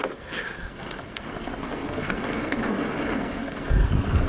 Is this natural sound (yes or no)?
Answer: no